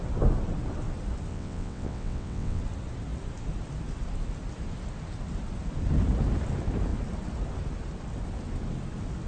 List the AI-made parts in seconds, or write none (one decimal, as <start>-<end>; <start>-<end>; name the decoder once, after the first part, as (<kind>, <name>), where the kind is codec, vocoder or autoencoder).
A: 1.3-2.6 (vocoder, WaveNeXt)